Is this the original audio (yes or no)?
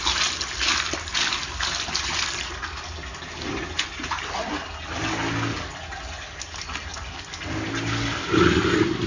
yes